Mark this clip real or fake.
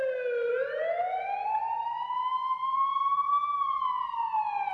real